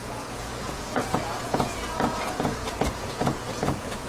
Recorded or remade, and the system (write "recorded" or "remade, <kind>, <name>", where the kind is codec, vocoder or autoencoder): remade, vocoder, Vocos